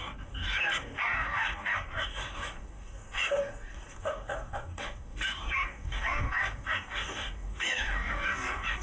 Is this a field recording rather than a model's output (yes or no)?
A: no